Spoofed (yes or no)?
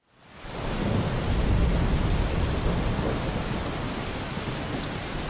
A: no